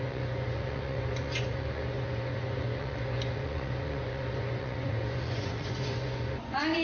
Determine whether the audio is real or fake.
fake